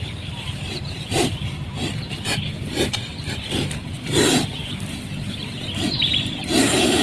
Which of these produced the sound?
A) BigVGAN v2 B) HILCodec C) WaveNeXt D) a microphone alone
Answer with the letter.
A